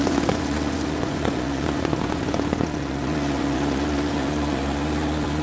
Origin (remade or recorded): remade